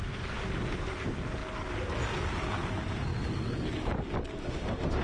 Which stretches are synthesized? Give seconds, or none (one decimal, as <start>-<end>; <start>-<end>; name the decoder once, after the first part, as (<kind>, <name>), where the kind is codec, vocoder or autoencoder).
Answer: 4.4-5.0 (autoencoder, DAC-VAE)